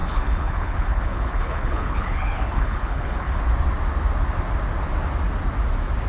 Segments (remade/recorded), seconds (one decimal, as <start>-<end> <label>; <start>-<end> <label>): 0.0-3.4 remade; 3.4-6.1 recorded